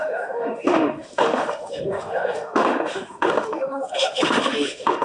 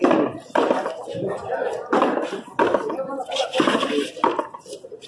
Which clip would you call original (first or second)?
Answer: second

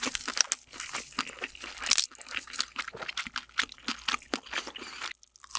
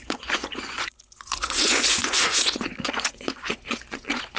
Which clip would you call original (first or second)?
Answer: first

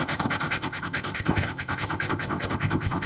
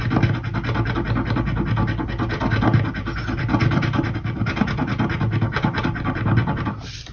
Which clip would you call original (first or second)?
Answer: second